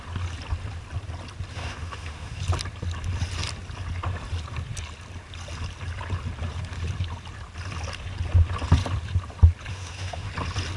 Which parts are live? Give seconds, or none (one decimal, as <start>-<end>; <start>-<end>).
0.0-1.5; 2.4-9.7; 10.3-10.8